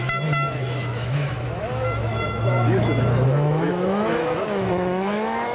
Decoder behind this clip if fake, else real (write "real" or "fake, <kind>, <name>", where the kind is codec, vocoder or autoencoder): fake, autoencoder, DAC-VAE